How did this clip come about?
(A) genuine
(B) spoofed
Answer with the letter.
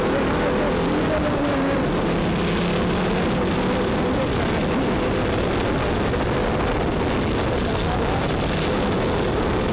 A